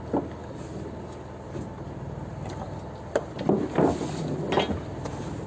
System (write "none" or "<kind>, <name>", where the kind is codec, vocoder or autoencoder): none